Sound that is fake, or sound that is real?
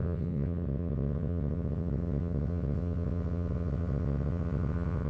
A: fake